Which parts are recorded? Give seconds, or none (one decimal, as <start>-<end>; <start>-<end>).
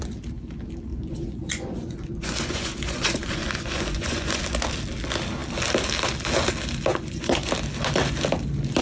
0.0-0.9; 4.4-6.9; 7.5-8.8